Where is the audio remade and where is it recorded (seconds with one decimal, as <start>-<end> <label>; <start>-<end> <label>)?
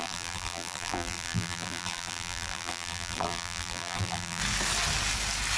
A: 0.0-4.4 remade; 4.4-5.6 recorded